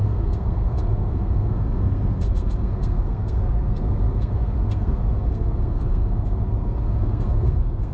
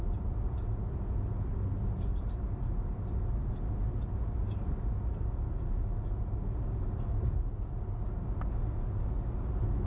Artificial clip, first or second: first